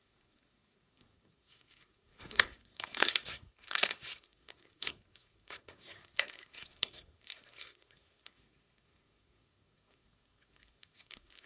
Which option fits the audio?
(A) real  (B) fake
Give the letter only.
B